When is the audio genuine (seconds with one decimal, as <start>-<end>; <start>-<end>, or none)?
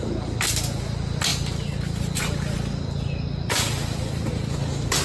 0.0-5.0